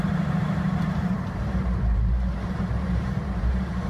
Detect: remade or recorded remade